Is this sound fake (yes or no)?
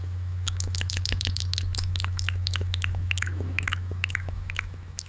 yes